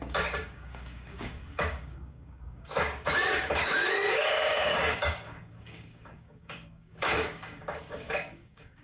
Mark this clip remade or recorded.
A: remade